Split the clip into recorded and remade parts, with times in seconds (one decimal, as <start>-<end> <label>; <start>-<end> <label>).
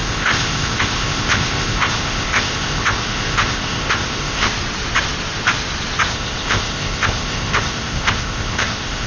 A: 0.0-4.5 remade; 4.5-6.1 recorded; 6.1-9.1 remade